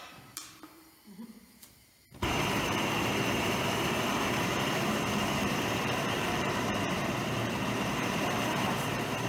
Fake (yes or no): yes